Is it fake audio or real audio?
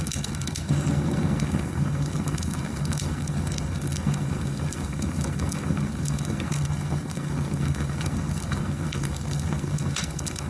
fake